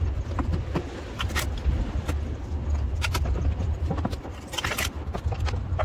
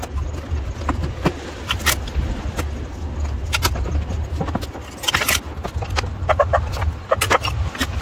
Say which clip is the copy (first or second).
first